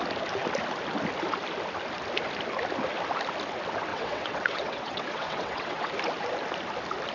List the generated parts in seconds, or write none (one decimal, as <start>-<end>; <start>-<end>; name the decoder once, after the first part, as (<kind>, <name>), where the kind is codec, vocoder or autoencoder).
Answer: 3.9-5.9 (vocoder, WaveNeXt)